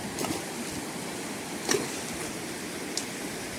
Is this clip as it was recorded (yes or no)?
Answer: yes